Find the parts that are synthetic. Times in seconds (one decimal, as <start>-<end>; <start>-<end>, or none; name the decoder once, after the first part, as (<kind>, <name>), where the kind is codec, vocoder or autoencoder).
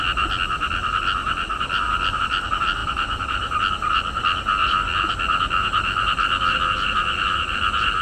1.2-2.2 (vocoder, BigVGAN v2); 2.8-3.6; 4.6-5.1